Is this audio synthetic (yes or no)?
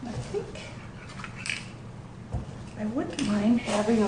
no